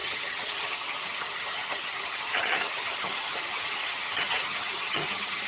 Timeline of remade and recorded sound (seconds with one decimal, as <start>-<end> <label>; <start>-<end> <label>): 0.0-5.5 remade